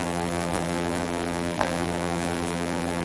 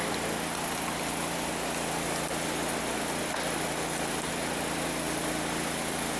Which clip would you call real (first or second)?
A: second